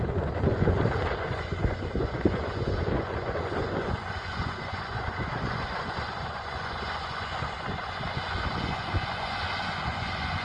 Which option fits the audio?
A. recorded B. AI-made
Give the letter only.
B